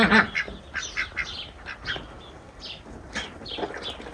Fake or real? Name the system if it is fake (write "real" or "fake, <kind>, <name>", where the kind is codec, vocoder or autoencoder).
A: real